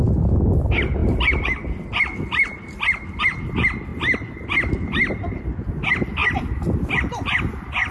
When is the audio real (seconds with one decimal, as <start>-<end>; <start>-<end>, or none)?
0.0-7.9